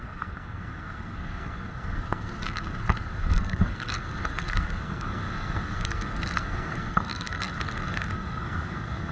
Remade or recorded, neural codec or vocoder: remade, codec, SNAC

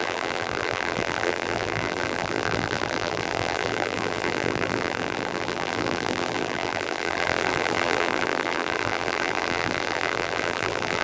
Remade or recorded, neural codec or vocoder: remade, vocoder, BigVGAN v2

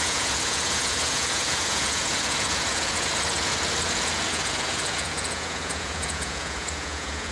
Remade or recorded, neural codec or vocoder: remade, vocoder, Vocos